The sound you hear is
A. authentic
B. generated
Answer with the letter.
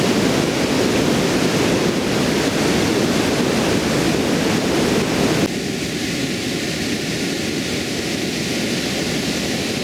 A